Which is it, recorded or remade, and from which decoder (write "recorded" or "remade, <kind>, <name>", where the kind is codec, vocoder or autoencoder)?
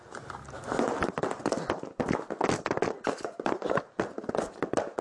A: recorded